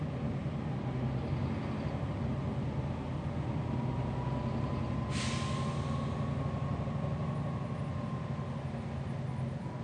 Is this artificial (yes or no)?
no